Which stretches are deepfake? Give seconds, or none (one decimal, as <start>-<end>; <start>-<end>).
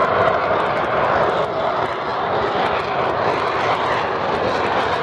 0.0-1.6